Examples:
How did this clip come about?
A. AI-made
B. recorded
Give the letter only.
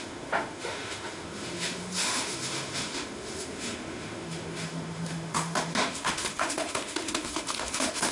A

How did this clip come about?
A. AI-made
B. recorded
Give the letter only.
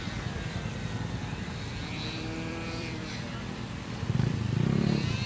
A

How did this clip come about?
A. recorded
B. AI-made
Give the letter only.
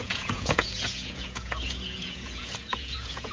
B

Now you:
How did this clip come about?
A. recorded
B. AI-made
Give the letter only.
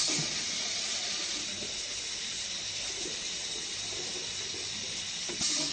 A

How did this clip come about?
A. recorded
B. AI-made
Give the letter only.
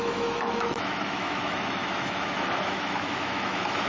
B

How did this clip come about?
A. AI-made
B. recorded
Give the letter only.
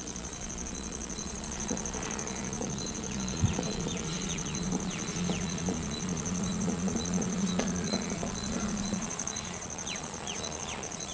A